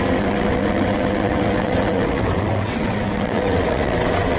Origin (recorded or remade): remade